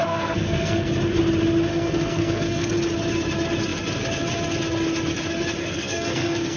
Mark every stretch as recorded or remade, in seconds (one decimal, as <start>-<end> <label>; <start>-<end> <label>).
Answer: 0.0-0.9 remade; 0.9-1.7 recorded; 1.7-2.7 remade; 2.7-5.6 recorded; 5.6-6.6 remade